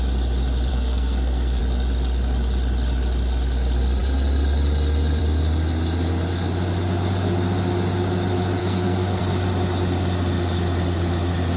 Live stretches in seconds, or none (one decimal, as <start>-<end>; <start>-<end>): 0.0-0.7; 1.6-8.6; 9.2-11.6